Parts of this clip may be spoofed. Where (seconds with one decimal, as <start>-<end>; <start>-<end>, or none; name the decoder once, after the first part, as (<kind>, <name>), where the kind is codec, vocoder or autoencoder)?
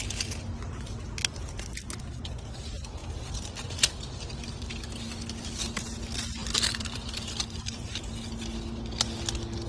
3.0-4.7 (vocoder, BigVGAN v2); 6.4-8.0